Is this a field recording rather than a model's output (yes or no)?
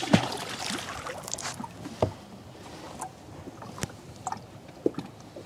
yes